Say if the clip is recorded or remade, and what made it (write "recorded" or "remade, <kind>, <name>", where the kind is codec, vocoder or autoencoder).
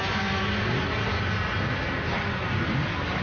recorded